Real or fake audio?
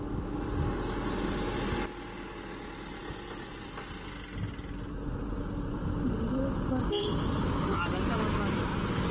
real